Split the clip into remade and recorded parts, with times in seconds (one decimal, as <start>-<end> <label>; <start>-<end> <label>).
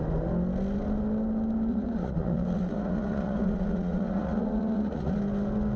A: 0.0-1.7 recorded; 1.7-5.2 remade; 5.2-5.8 recorded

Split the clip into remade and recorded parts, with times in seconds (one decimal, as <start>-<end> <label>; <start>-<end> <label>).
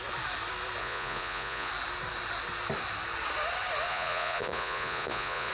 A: 0.0-0.8 recorded; 0.8-1.7 remade; 1.7-3.9 recorded; 3.9-5.5 remade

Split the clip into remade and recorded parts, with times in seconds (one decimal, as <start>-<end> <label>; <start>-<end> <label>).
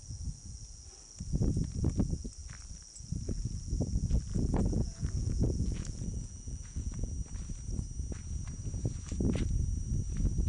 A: 0.0-4.3 recorded; 4.3-7.1 remade; 7.1-10.5 recorded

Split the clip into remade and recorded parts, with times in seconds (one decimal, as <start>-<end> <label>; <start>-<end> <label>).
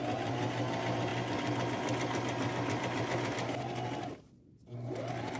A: 0.0-5.4 recorded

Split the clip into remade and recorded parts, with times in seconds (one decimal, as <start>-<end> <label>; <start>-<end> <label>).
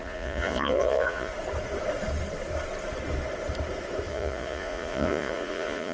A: 0.0-1.3 remade; 1.3-4.1 recorded; 4.1-5.9 remade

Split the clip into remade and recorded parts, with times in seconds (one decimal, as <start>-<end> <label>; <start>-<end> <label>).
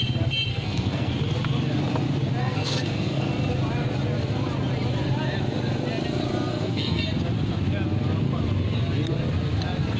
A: 0.0-0.5 recorded; 0.5-1.1 remade; 1.1-2.4 recorded; 2.4-3.3 remade; 3.3-6.3 recorded; 6.3-7.0 remade; 7.0-10.0 recorded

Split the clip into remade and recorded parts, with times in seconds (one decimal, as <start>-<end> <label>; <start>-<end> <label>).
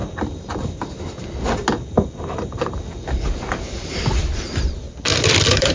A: 0.0-4.2 recorded; 4.2-5.7 remade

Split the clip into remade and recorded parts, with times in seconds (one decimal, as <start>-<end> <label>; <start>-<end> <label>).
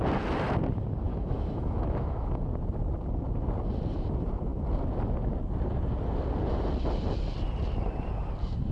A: 0.0-1.1 recorded; 1.1-2.4 remade; 2.4-8.7 recorded